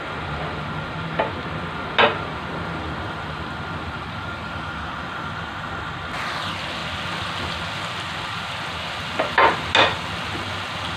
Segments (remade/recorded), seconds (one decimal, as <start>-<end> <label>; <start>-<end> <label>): 0.0-11.0 recorded